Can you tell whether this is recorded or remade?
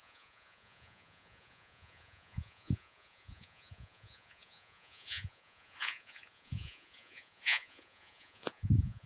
remade